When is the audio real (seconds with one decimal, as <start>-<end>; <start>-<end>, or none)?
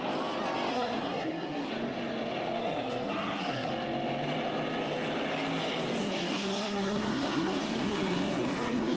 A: 0.0-0.7; 1.7-2.6; 3.7-6.0